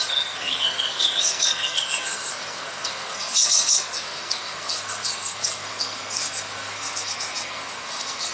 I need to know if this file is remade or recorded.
remade